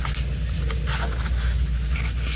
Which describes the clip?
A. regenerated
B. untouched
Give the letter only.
B